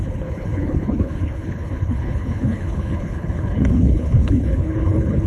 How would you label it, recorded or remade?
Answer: remade